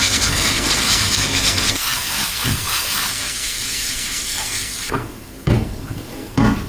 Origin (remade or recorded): remade